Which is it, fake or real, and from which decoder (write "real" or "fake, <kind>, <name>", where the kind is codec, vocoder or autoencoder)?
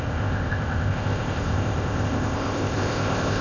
fake, codec, ZipCodec